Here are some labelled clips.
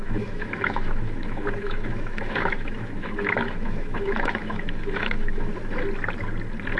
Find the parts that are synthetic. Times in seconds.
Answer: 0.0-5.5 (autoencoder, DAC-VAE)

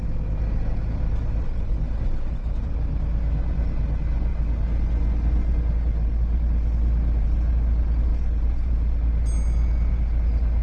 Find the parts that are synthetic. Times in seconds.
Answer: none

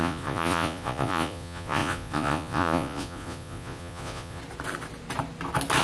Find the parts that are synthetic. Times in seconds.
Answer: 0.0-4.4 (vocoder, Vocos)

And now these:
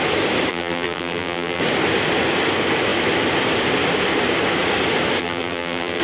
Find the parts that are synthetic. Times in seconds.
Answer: 0.5-1.6 (vocoder, BigVGAN v2); 5.2-6.0